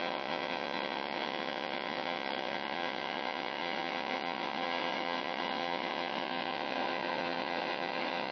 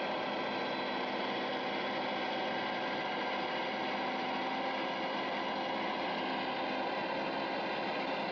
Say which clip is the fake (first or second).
first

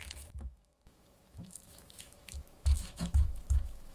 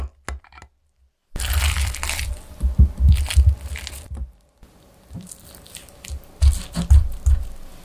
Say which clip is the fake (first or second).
first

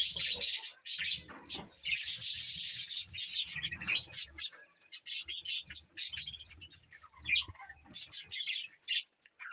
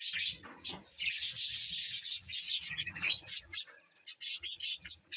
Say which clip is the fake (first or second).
second